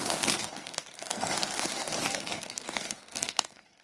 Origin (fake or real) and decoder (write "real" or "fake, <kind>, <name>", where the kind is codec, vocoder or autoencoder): fake, codec, SNAC